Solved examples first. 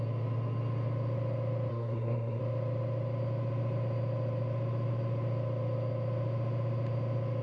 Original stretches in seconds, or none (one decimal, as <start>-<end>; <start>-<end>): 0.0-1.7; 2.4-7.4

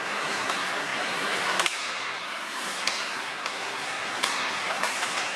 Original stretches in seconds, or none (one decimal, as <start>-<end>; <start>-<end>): none

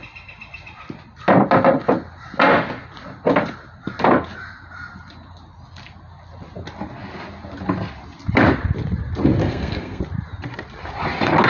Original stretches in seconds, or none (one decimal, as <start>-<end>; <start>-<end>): 0.0-9.4; 10.0-11.5

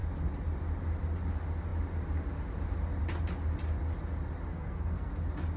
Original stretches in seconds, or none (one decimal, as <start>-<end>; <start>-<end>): 0.0-4.5; 5.1-5.6